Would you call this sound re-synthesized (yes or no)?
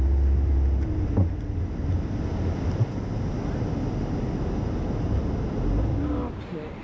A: no